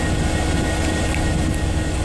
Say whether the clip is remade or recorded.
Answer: recorded